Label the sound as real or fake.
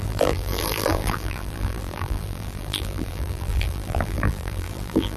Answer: fake